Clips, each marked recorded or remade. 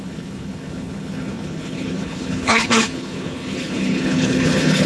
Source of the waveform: remade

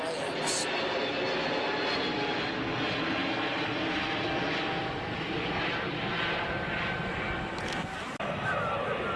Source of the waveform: recorded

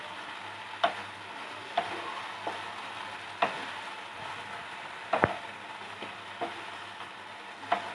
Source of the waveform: recorded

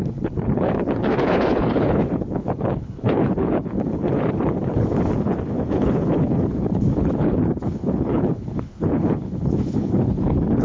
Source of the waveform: remade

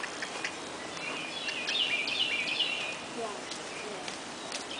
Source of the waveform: recorded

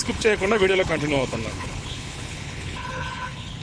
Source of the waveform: remade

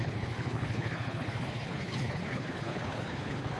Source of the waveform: remade